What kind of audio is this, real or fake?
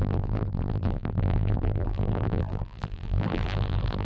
fake